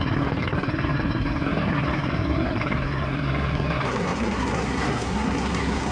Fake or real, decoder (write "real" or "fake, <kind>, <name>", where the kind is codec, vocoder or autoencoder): fake, codec, SNAC